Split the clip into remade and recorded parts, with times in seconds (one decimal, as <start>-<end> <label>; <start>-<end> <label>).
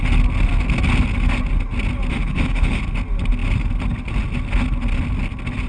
0.0-2.1 recorded; 2.1-2.8 remade; 2.8-5.7 recorded